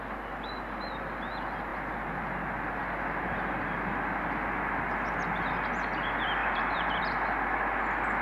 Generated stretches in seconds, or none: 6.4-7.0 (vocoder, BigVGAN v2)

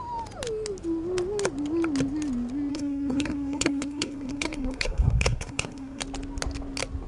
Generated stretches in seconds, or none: 2.7-6.0 (codec, SNAC)

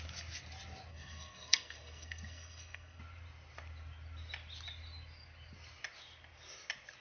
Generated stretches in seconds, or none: 0.9-3.0 (codec, SNAC)

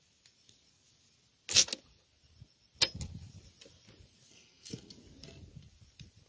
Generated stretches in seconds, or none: 4.3-4.9 (codec, SNAC)

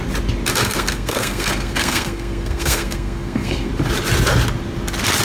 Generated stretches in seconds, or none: 0.6-3.7 (codec, SNAC)

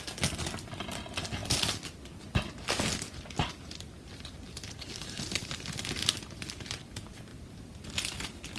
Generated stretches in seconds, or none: none

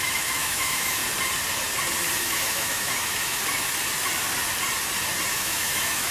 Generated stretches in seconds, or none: 0.0-1.0 (autoencoder, DAC-VAE); 2.2-3.4; 5.3-6.1